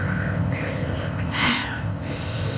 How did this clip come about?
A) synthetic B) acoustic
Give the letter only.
A